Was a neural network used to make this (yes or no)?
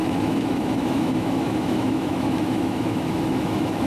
yes